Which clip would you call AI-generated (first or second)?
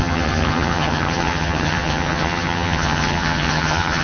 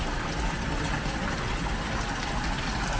first